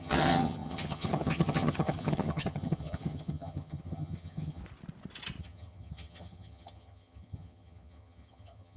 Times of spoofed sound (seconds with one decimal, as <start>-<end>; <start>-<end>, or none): 0.0-4.6; 5.4-8.8

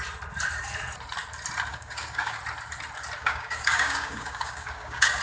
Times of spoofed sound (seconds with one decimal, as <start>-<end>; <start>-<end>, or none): 1.7-2.4; 3.2-5.2

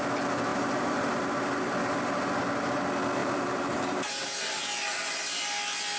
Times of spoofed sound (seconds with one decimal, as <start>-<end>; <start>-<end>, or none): 0.5-1.0; 3.2-4.6

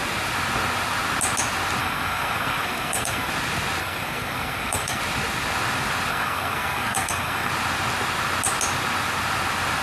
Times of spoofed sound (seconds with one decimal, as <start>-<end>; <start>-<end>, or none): 1.8-3.3; 3.8-5.0; 6.1-7.5

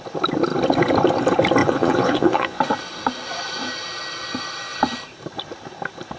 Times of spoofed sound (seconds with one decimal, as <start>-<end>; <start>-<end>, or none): 1.6-2.6

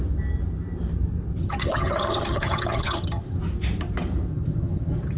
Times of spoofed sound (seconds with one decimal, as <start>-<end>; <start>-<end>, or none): 1.4-3.4; 4.3-5.2